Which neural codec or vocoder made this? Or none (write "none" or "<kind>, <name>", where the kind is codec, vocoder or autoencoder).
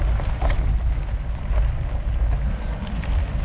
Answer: none